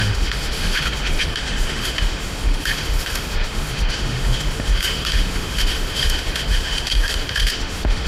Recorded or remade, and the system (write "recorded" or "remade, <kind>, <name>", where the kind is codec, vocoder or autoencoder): remade, autoencoder, DAC-VAE